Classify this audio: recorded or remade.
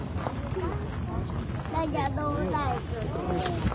recorded